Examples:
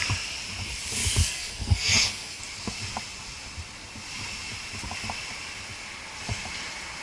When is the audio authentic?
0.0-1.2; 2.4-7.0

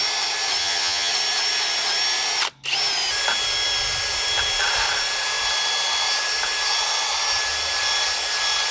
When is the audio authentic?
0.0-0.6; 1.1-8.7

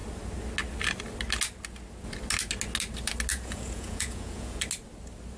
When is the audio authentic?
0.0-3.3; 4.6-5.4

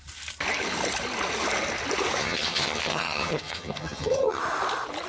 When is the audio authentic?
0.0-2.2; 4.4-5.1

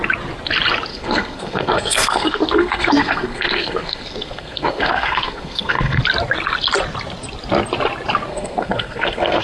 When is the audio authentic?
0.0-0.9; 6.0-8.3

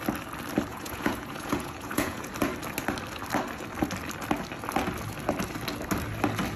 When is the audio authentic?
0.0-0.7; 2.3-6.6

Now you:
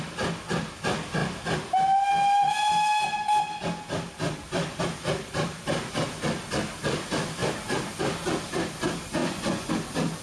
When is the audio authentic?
0.0-9.2; 9.7-10.2